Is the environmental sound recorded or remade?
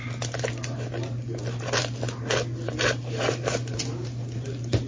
recorded